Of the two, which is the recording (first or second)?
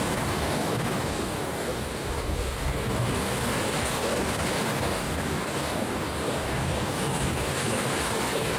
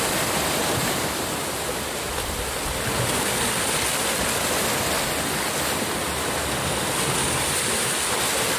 second